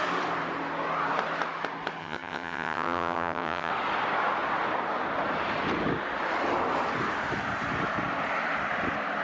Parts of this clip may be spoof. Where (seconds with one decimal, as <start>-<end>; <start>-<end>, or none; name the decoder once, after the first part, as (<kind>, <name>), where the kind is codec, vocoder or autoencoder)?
2.0-3.7 (vocoder, HiFi-GAN)

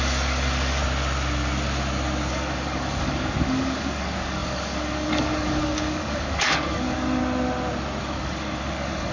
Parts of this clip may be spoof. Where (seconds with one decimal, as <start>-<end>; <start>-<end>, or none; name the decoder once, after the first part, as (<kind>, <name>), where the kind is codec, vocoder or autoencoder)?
0.0-0.8 (codec, DAC); 2.3-7.2; 8.0-9.1